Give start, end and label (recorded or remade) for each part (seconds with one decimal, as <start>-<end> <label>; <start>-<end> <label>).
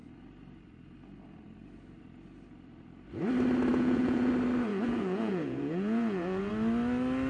0.0-3.7 recorded; 3.7-4.3 remade; 4.3-4.7 recorded; 4.7-6.5 remade; 6.5-7.3 recorded